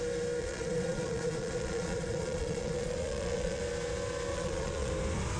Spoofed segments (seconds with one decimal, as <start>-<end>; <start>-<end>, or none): 0.4-3.6; 4.3-4.9